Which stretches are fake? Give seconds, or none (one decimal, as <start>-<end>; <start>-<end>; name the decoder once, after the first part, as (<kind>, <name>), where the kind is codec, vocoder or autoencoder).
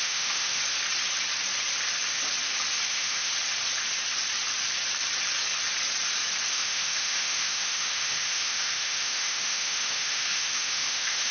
0.0-0.6 (autoencoder, DAC-VAE); 2.9-3.3; 6.5-11.3